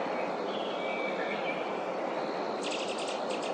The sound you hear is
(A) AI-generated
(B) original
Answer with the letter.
B